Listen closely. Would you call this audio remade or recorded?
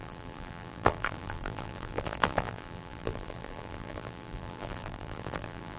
remade